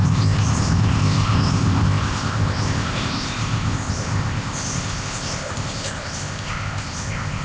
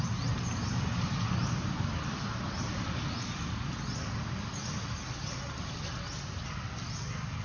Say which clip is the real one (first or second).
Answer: second